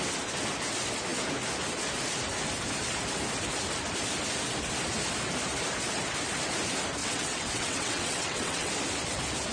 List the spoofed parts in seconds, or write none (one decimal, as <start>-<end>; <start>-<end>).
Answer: 7.0-8.7